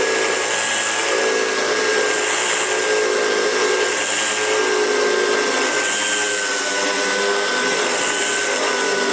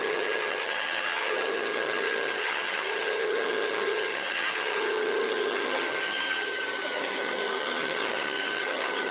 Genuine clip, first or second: first